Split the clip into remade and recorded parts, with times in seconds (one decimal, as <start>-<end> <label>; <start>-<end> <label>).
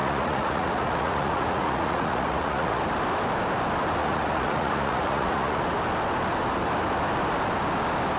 0.0-2.8 remade; 2.8-4.0 recorded; 4.0-5.6 remade; 5.6-8.2 recorded